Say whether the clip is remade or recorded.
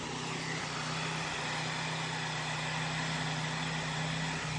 recorded